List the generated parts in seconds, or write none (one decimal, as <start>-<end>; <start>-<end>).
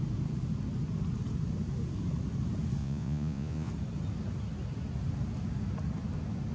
2.8-3.7